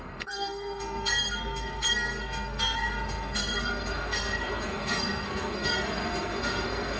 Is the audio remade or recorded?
remade